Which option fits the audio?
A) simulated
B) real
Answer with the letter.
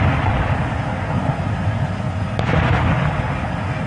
B